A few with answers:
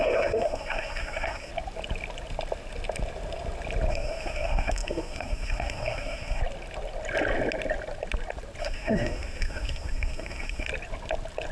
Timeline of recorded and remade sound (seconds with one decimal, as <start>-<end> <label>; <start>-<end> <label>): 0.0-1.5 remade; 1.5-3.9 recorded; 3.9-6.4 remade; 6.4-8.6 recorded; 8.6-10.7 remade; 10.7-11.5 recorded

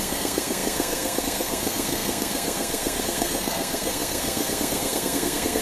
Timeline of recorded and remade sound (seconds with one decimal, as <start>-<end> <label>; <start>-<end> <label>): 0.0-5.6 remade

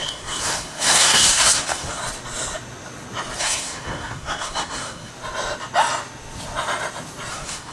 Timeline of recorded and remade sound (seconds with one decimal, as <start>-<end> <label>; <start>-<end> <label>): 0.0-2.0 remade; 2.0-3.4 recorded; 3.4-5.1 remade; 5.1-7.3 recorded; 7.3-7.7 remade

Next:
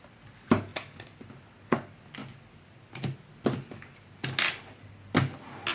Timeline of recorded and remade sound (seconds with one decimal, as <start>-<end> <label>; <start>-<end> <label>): 0.0-5.7 recorded